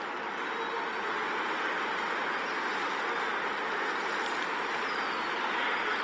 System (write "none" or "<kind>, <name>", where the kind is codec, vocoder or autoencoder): none